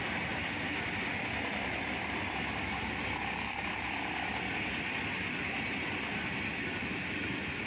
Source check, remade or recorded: recorded